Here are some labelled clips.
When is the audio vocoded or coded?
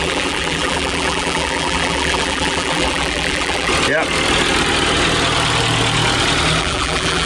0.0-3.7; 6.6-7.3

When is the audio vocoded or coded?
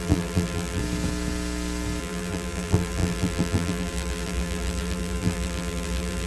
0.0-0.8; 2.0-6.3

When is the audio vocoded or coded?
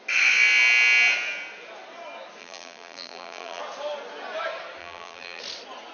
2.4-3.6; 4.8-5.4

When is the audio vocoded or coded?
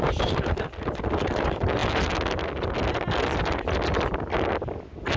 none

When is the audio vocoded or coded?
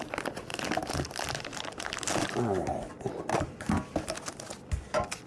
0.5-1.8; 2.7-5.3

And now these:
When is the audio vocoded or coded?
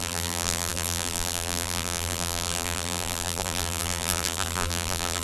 0.0-5.2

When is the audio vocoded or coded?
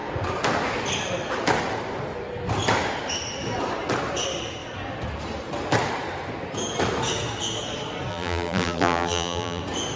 8.1-9.6